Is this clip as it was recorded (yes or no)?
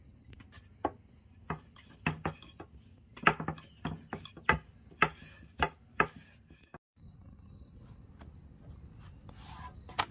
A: yes